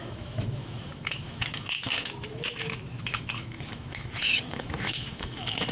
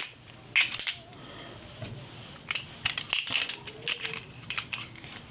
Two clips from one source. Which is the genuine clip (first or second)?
second